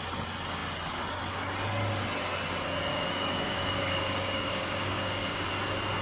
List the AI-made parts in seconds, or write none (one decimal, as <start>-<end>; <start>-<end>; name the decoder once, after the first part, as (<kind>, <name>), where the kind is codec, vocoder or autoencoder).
2.9-5.5 (codec, DAC)

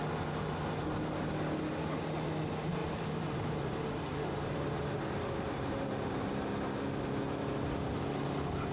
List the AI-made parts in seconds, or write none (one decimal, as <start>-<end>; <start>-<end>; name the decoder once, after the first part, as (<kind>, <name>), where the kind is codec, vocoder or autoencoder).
2.8-6.3 (vocoder, BigVGAN v2)

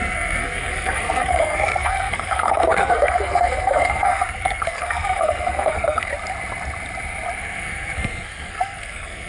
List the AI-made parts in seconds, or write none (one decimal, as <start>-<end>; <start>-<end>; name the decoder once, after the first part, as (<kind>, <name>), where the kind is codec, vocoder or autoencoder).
0.0-6.1 (codec, SNAC); 7.4-9.3

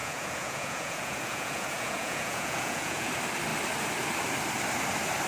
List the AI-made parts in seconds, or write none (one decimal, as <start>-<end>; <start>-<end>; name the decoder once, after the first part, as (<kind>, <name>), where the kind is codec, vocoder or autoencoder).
0.0-3.1 (vocoder, Vocos)

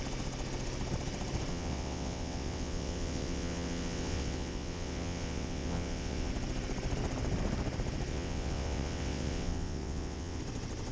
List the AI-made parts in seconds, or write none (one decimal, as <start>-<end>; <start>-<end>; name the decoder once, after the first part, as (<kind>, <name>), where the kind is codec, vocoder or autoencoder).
1.5-6.3 (vocoder, WaveNeXt); 8.1-10.4

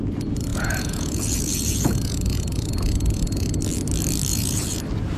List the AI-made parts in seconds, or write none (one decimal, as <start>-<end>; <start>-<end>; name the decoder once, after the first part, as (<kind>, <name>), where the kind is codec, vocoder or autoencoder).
0.5-3.6 (vocoder, Vocos); 4.3-4.8

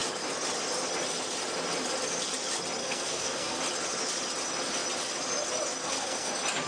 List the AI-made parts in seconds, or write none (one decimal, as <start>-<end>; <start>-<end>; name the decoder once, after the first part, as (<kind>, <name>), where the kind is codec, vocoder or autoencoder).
2.8-3.6 (codec, SNAC); 5.8-6.3